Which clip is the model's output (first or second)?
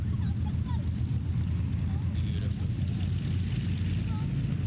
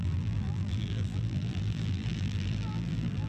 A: second